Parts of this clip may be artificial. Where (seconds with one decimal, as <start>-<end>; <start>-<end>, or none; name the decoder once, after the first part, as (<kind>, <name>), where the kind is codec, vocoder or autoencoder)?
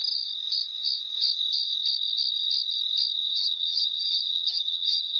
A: 3.3-5.2 (vocoder, HiFi-GAN)